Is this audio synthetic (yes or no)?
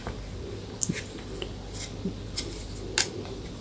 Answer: no